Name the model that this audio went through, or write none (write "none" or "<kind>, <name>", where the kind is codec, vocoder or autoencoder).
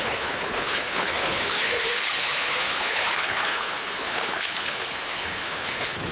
codec, HILCodec